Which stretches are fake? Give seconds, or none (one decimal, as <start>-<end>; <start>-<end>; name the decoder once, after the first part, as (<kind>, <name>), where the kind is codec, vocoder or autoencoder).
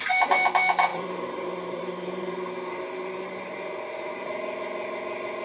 0.9-4.1 (vocoder, BigVGAN v2)